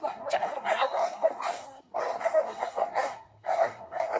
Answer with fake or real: fake